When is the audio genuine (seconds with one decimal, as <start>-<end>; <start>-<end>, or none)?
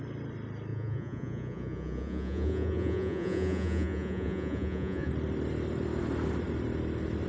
0.0-0.7; 5.1-7.3